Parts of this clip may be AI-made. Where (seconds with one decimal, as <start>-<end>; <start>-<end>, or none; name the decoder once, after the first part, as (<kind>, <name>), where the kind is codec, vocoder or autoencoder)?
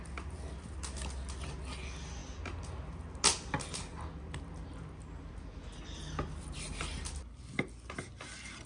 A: none